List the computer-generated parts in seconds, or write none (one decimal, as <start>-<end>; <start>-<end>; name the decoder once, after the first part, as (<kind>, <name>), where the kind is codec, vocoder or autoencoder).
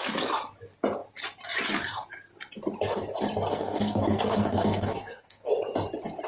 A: 3.5-5.5 (codec, SNAC)